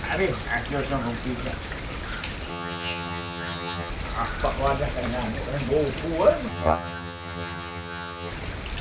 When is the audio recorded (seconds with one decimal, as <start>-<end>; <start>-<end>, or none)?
0.0-2.5; 3.9-6.5; 8.3-8.8